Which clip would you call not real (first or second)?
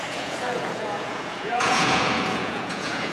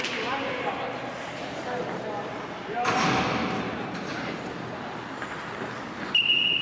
first